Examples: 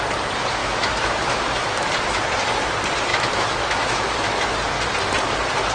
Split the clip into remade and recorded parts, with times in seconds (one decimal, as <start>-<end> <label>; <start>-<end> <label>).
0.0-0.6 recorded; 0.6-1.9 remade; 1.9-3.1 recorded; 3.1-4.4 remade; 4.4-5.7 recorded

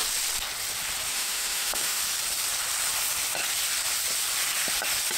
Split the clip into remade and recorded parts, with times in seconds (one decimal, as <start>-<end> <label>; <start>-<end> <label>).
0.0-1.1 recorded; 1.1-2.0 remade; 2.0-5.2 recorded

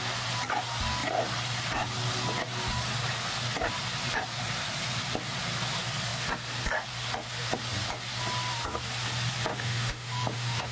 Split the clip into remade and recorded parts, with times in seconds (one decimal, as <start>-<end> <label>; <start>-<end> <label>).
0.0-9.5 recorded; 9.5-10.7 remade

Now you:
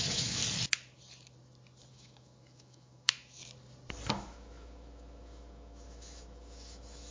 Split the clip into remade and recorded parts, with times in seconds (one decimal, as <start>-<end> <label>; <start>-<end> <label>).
0.0-0.4 remade; 0.4-1.9 recorded; 1.9-3.4 remade; 3.4-4.1 recorded; 4.1-7.1 remade